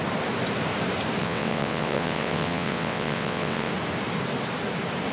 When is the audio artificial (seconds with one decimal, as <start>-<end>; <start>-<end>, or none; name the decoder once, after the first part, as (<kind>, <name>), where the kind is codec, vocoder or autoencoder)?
1.2-3.7 (vocoder, WaveNeXt)